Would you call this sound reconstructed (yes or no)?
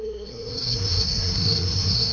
yes